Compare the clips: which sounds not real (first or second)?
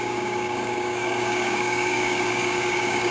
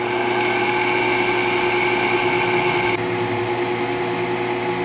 first